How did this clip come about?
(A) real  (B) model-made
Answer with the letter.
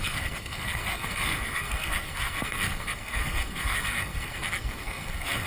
B